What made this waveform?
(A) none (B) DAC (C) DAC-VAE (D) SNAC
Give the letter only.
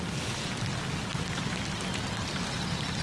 A